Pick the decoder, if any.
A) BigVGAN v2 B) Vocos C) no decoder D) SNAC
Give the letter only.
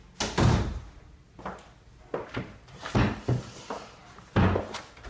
C